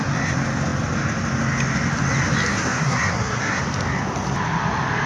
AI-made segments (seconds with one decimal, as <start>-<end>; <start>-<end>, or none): 2.5-3.6